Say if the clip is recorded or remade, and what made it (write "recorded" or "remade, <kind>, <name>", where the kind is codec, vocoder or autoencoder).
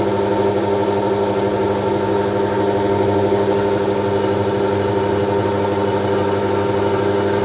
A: recorded